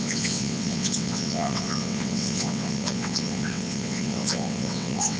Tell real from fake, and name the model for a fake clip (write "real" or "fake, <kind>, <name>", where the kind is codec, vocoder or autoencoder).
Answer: fake, vocoder, WaveNeXt